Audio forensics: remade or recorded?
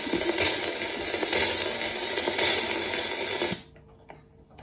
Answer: recorded